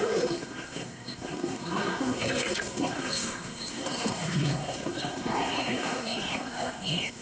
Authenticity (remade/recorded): remade